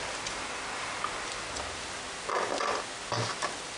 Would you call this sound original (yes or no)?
yes